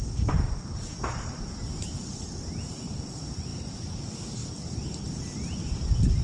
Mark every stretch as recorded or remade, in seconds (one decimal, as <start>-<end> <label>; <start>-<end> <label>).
0.0-6.2 recorded